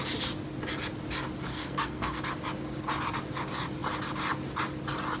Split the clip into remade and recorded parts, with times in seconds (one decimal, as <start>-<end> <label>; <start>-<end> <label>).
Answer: 0.0-1.5 recorded; 1.5-2.2 remade; 2.2-5.2 recorded